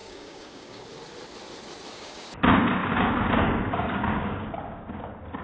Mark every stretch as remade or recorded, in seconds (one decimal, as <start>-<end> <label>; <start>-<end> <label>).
0.0-0.8 remade; 0.8-1.9 recorded; 1.9-2.4 remade; 2.4-2.8 recorded; 2.8-5.0 remade; 5.0-5.4 recorded